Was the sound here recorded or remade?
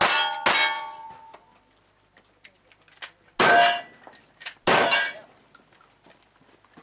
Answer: recorded